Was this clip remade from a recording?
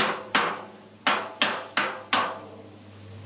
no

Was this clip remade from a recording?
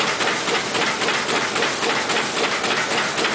no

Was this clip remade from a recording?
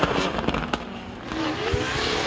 no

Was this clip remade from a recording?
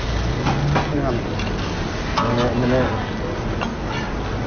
no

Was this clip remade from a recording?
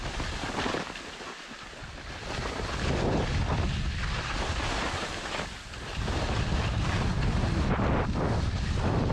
no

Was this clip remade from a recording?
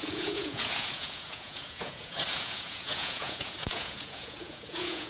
yes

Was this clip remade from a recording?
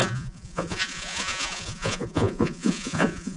yes